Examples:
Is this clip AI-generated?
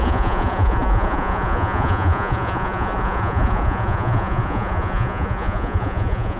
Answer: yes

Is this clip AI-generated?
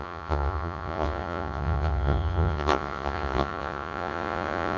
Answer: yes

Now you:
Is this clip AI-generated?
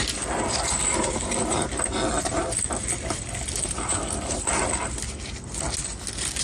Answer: no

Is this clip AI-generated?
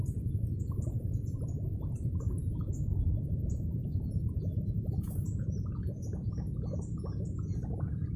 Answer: yes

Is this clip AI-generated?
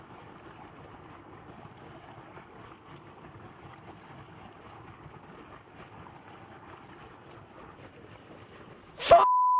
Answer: no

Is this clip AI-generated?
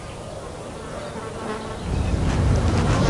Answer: no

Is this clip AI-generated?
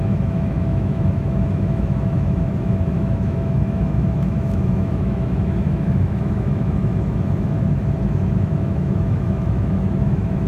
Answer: yes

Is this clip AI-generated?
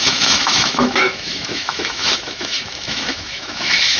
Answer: yes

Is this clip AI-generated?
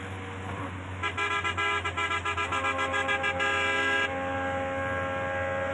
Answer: no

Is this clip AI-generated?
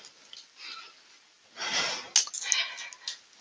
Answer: no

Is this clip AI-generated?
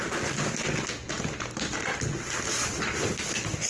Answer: no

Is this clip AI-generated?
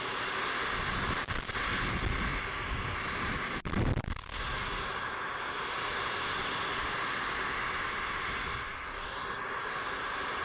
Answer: no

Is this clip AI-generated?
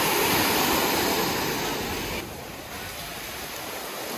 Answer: no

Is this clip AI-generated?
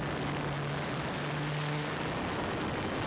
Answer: no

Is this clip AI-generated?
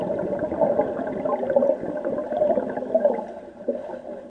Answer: no